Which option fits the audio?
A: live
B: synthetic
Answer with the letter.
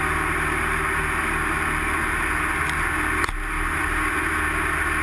A